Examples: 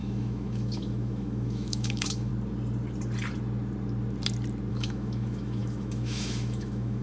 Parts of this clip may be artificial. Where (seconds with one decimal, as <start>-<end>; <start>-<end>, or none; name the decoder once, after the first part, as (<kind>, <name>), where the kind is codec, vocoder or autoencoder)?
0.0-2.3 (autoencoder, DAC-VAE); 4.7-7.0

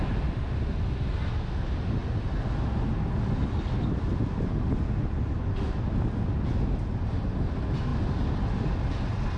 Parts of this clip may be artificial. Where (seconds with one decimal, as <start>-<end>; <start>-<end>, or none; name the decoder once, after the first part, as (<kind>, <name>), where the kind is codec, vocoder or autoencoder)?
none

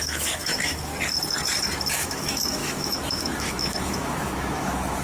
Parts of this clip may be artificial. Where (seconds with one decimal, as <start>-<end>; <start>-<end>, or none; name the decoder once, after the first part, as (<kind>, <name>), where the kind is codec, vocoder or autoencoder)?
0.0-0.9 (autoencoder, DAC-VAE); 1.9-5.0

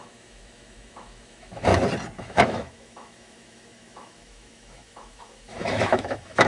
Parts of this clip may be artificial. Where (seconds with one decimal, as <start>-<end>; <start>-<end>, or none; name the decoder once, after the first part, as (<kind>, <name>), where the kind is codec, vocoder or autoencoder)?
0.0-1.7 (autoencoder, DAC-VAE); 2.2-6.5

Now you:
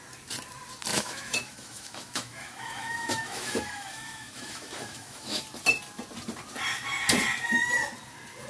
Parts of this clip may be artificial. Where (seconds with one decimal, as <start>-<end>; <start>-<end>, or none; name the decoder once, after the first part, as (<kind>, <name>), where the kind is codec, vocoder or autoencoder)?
0.9-5.4 (autoencoder, DAC-VAE)